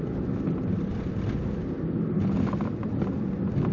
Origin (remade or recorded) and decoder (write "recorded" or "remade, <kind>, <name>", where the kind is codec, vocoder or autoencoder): recorded